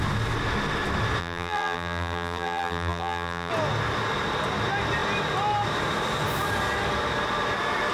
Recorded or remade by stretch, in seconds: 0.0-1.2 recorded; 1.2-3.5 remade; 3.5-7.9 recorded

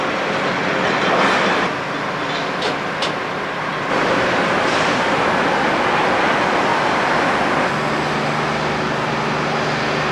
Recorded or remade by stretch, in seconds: 0.0-6.7 recorded; 6.7-7.7 remade; 7.7-10.1 recorded

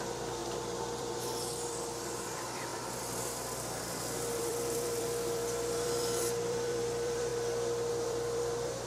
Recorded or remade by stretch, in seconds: 0.0-0.4 remade; 0.4-1.0 recorded; 1.0-7.3 remade; 7.3-7.9 recorded; 7.9-8.9 remade

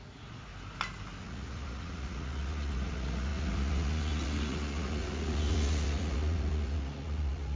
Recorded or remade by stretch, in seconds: 0.0-0.5 remade; 0.5-1.2 recorded; 1.2-7.6 remade

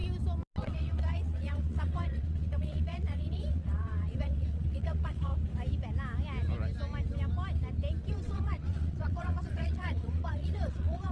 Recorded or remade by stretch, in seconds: 0.0-0.6 recorded; 0.6-5.3 remade; 5.3-8.1 recorded; 8.1-11.1 remade